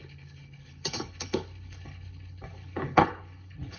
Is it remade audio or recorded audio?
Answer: remade